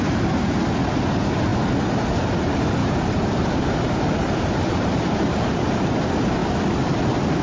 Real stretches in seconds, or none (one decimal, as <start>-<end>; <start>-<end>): 0.0-2.8; 5.9-7.4